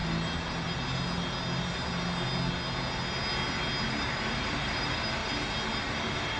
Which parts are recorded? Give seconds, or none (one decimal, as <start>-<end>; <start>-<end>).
0.0-3.8; 5.2-5.8